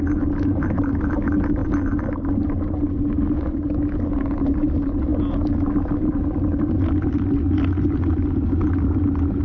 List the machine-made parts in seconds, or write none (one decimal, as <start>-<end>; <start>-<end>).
none